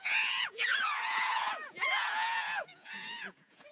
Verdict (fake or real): fake